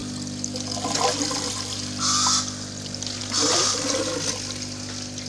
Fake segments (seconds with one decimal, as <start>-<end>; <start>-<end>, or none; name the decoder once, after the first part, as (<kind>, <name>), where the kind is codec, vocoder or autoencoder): none

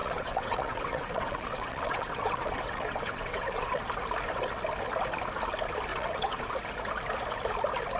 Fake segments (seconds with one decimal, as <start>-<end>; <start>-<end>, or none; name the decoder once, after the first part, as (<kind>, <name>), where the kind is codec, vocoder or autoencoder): 0.0-3.8 (vocoder, WaveNeXt); 5.9-6.4

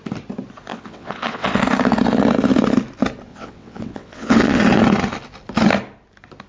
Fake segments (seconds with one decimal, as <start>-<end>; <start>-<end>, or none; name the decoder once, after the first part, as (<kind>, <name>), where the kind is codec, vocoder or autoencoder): 0.7-1.6 (vocoder, WaveNeXt); 3.3-4.6

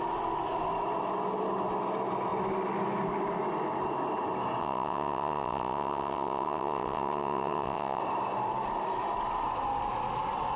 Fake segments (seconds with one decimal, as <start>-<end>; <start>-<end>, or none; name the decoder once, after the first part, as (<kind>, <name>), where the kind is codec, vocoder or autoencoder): 4.6-8.0 (vocoder, WaveNeXt)

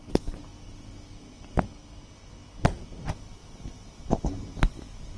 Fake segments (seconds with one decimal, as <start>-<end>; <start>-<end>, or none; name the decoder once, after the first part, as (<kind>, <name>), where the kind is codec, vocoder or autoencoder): none

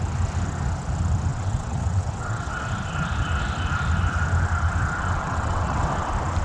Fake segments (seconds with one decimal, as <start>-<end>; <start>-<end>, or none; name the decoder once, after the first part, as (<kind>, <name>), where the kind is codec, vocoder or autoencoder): 1.3-2.6 (vocoder, WaveNeXt); 5.2-5.9

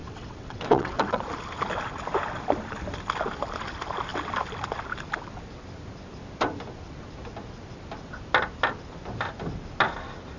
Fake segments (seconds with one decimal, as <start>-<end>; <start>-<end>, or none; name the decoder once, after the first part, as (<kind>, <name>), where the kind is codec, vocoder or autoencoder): 0.0-1.2 (vocoder, WaveNeXt)